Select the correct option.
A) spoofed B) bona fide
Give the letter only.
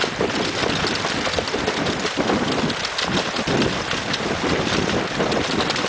B